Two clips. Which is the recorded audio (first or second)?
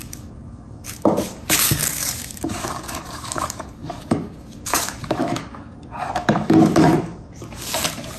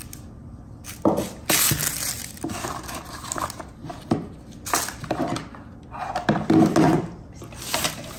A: second